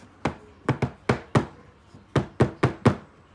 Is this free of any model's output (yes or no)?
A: yes